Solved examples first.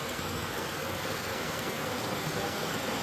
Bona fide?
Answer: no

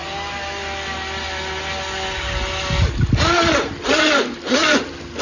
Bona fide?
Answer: yes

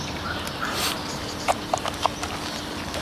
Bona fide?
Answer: yes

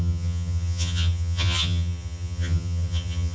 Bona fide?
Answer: no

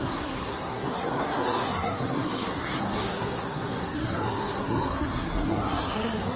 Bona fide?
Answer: no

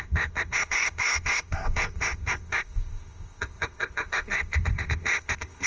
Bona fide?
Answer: no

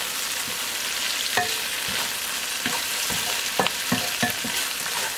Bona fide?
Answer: yes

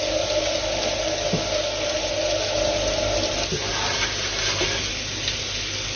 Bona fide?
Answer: yes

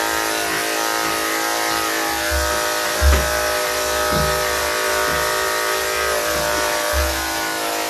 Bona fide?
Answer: yes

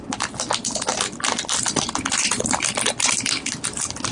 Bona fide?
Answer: yes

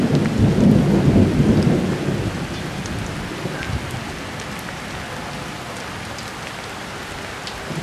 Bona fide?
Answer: yes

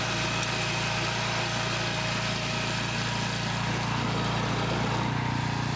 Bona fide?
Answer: yes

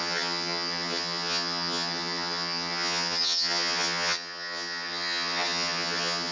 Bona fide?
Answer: no